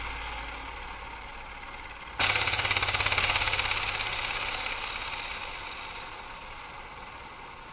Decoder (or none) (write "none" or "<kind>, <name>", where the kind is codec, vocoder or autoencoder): none